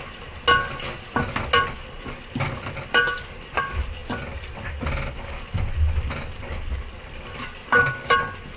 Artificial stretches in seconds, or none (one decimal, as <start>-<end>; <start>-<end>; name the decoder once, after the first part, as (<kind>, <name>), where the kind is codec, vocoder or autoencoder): none